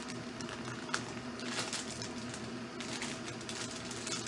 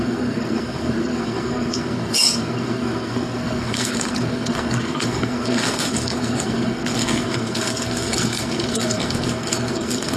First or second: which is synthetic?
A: second